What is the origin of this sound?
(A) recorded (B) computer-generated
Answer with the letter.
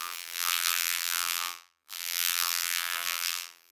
B